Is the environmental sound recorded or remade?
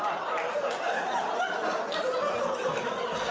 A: recorded